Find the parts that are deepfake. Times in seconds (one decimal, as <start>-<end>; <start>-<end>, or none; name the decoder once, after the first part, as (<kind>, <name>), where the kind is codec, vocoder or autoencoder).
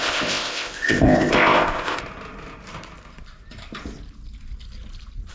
0.0-2.0 (codec, ZipCodec)